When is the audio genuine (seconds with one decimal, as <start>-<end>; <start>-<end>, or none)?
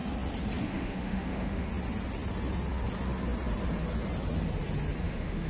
0.0-0.6; 1.7-5.0